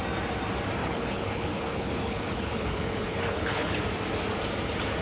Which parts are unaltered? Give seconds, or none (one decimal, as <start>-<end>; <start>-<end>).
0.0-0.8; 3.8-5.0